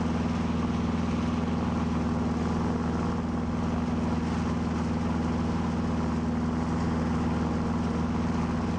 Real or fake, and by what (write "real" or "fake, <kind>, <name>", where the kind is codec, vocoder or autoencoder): real